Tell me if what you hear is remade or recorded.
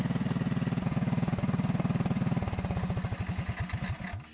recorded